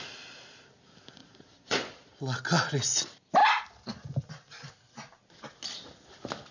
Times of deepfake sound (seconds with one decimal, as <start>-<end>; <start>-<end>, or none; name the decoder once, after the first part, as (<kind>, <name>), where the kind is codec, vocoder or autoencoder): 1.2-2.2 (vocoder, Vocos)